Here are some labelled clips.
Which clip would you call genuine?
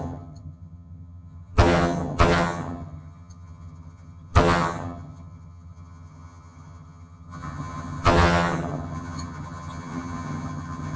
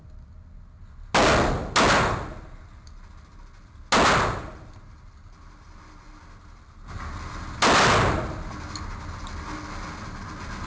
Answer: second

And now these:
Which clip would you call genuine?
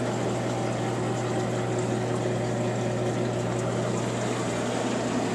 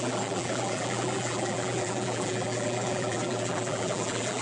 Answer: first